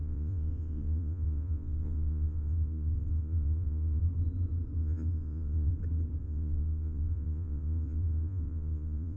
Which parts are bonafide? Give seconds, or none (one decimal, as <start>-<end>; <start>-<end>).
4.0-4.8; 5.7-6.2